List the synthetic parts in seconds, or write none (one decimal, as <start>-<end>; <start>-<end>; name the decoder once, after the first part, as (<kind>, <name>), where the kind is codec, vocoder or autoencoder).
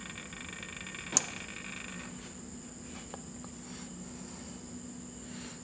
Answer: none